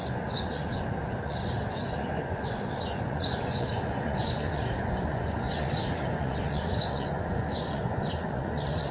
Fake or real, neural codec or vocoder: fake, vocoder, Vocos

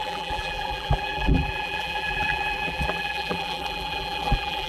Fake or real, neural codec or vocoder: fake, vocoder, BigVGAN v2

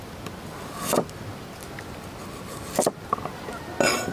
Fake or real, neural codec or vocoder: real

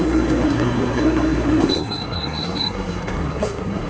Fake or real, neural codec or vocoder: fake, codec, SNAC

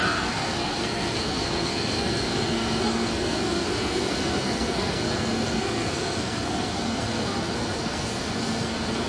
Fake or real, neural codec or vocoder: fake, codec, SNAC